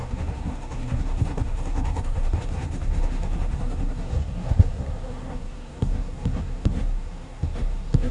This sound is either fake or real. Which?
fake